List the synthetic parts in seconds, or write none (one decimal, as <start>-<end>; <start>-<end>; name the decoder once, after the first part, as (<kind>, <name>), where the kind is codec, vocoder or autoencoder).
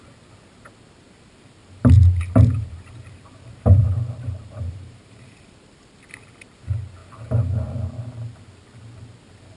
1.6-5.8 (vocoder, BigVGAN v2)